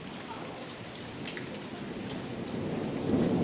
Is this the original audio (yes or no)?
yes